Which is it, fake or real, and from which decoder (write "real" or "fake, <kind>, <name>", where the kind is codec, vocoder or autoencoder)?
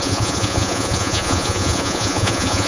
fake, vocoder, Vocos